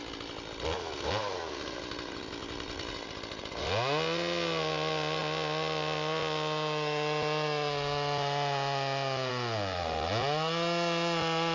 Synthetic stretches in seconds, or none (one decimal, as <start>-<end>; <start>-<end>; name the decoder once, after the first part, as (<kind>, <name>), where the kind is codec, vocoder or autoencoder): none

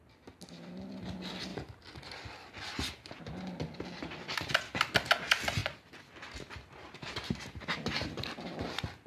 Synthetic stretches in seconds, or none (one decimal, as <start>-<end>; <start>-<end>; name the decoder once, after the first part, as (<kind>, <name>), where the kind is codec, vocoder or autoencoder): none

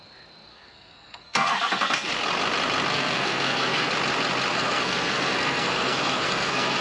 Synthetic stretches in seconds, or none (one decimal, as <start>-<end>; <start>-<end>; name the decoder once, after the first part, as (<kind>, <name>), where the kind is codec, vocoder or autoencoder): 0.5-2.1 (codec, SNAC); 2.9-3.9; 4.5-6.8